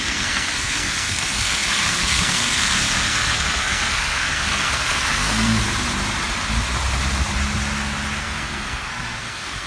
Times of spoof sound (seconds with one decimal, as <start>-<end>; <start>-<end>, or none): 0.0-5.6; 8.2-9.7

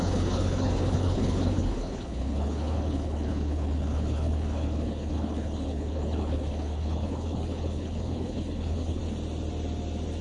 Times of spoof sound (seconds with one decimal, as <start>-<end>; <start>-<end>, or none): 0.0-9.0

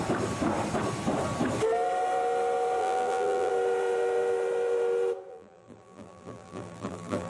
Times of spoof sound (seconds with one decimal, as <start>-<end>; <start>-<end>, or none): 2.8-3.5; 5.3-7.3

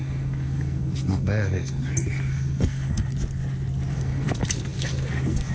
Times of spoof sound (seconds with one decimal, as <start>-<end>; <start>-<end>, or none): 0.0-1.8; 2.3-3.1; 3.9-5.5